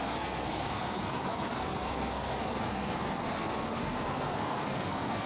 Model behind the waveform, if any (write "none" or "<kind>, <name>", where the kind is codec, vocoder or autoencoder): codec, SNAC